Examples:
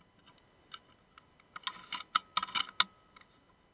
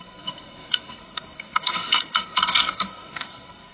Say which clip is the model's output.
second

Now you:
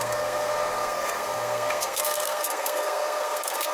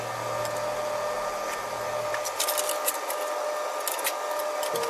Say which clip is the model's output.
first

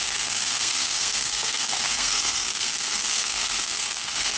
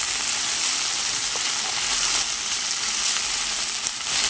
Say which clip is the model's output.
first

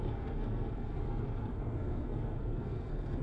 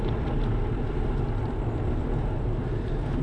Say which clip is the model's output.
first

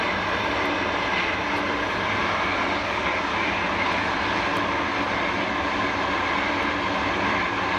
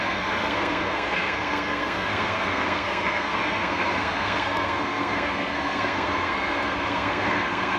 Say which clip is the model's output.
second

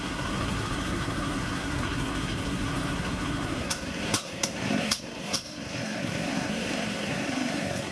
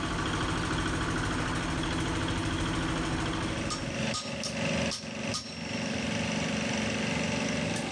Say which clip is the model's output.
first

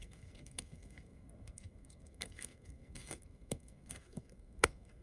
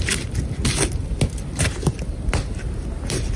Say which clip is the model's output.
first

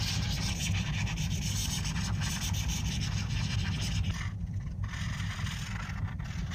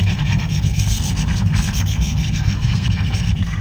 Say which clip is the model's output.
second